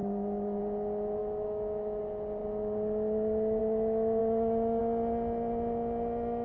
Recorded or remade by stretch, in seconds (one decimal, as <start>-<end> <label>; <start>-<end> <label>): 0.0-0.6 remade; 0.6-1.2 recorded; 1.2-2.0 remade; 2.0-4.2 recorded; 4.2-4.8 remade; 4.8-6.4 recorded